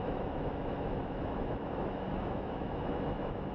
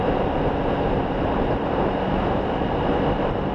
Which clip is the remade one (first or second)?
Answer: first